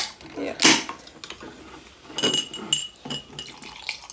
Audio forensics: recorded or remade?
recorded